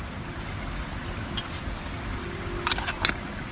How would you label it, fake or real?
real